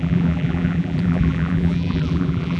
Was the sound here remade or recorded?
remade